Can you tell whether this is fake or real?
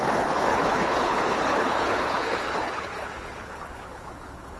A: fake